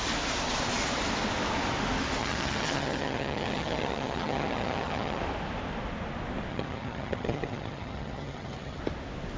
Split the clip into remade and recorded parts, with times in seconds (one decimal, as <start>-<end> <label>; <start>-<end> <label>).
0.0-2.2 recorded; 2.2-5.2 remade; 5.2-6.5 recorded; 6.5-8.8 remade; 8.8-9.4 recorded